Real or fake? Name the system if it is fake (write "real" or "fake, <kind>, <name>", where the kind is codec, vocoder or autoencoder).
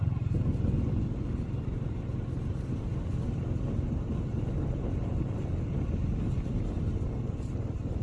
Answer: real